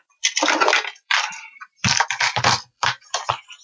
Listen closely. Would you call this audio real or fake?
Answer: fake